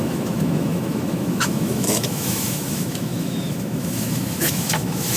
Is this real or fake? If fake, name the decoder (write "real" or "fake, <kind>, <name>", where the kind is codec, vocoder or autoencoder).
fake, autoencoder, DAC-VAE